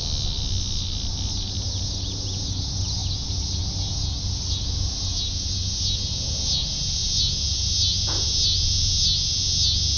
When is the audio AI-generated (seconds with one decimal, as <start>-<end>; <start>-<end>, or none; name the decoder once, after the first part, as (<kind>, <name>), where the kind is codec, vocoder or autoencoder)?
none